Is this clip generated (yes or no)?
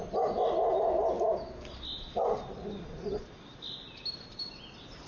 no